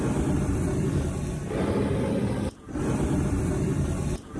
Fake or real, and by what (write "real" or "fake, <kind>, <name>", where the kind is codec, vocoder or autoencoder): real